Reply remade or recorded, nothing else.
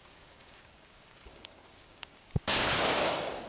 remade